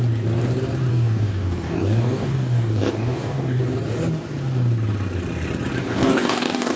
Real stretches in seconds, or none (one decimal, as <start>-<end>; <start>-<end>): 0.0-0.9; 3.6-5.8